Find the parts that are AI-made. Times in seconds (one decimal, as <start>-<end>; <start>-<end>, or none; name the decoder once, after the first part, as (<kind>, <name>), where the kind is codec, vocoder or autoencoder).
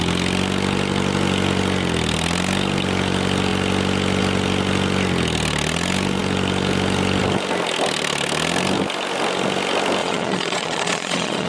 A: 10.0-11.5 (vocoder, Vocos)